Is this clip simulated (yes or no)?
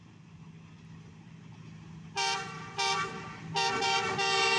no